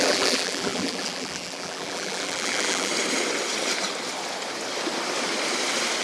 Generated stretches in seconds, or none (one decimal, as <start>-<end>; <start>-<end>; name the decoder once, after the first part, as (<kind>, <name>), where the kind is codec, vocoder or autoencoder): 0.0-2.9 (vocoder, BigVGAN v2)